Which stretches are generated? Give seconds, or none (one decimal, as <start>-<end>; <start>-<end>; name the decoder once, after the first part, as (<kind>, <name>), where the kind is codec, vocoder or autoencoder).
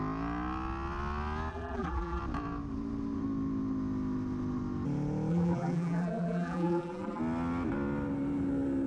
1.5-2.2 (vocoder, BigVGAN v2); 5.3-7.2